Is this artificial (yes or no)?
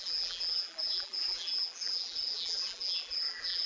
yes